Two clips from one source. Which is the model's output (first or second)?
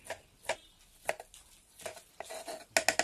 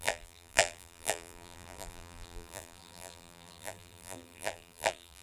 second